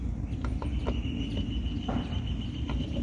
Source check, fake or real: real